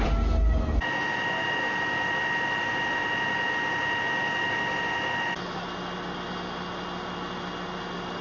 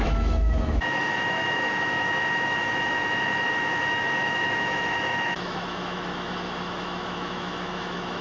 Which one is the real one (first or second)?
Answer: first